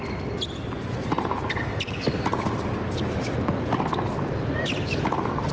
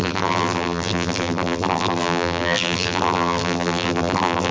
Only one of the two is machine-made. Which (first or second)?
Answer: second